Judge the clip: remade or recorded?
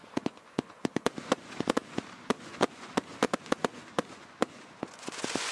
remade